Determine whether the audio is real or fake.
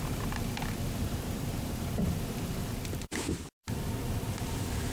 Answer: fake